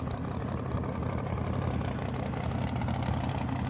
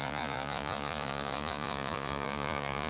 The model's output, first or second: second